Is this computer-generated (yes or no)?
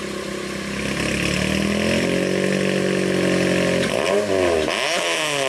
no